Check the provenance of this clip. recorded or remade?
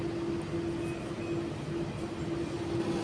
recorded